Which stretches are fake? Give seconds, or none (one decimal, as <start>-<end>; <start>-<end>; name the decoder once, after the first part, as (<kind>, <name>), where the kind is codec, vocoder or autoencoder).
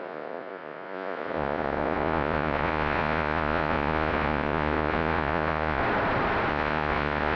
0.0-5.8 (vocoder, Vocos); 6.5-7.4